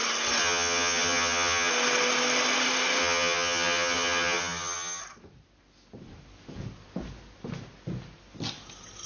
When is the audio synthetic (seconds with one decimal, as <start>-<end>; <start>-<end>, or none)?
0.4-1.7; 3.0-5.0